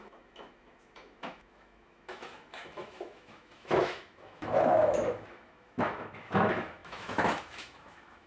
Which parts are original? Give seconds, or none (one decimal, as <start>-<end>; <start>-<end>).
none